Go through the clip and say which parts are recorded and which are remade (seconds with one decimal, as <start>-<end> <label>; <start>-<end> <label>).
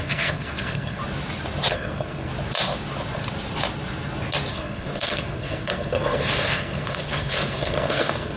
0.0-1.0 remade; 1.0-1.7 recorded; 1.7-2.3 remade; 2.3-4.5 recorded; 4.5-8.4 remade